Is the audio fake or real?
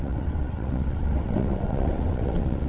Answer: fake